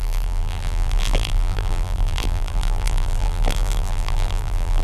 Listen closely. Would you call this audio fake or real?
fake